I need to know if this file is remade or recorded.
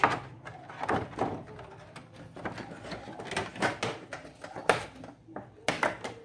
recorded